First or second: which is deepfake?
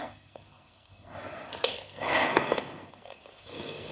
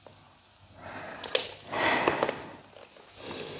first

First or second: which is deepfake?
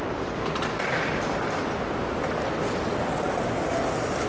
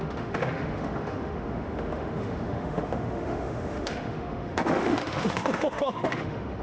second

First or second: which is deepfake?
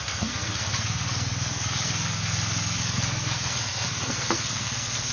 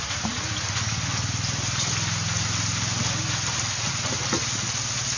first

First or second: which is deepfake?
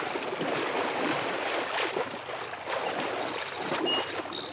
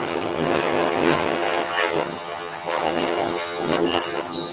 second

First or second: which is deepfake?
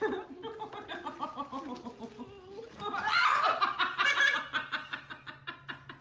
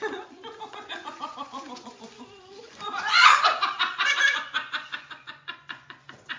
second